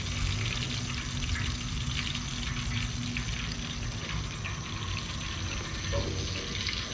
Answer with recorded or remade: recorded